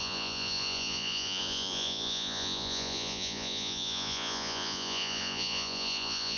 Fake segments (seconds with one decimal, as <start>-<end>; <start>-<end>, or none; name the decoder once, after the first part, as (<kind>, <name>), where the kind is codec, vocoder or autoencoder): 0.0-6.4 (vocoder, Vocos)